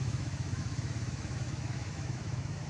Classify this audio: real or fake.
fake